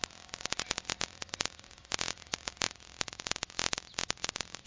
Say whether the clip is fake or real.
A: real